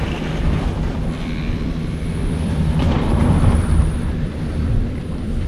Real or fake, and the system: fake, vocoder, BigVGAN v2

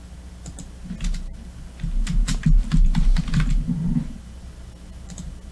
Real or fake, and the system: real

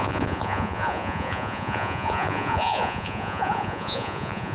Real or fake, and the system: fake, vocoder, Vocos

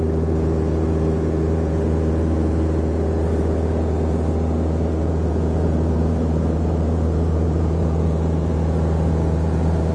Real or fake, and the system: fake, vocoder, Vocos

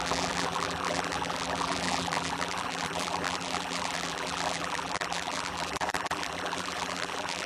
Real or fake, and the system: fake, vocoder, BigVGAN v2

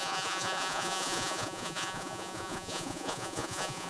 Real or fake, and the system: fake, vocoder, Vocos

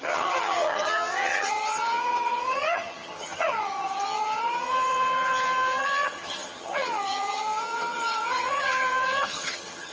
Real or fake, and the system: fake, vocoder, HiFi-GAN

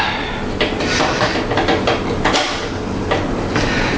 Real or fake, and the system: real